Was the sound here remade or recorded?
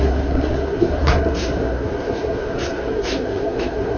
remade